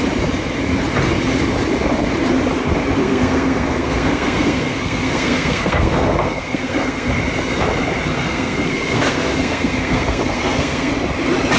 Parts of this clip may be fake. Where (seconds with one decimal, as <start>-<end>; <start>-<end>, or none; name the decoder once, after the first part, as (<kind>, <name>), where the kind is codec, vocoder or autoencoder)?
3.0-7.1 (codec, SNAC); 8.1-10.9